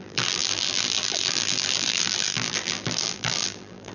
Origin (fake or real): fake